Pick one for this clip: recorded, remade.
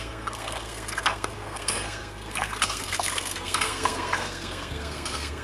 remade